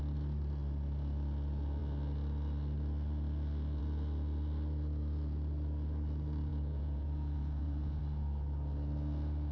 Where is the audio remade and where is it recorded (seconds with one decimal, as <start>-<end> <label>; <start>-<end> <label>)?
0.0-6.5 recorded; 6.5-8.0 remade; 8.0-9.5 recorded